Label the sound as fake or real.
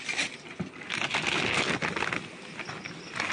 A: real